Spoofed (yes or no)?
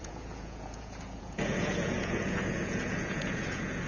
yes